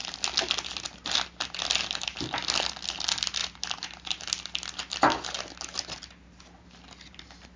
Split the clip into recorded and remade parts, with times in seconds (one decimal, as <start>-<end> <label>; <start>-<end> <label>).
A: 0.0-7.6 recorded